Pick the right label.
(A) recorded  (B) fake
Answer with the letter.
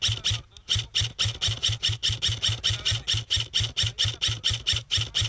A